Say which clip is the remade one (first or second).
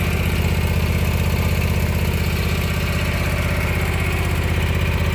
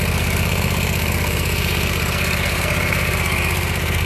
second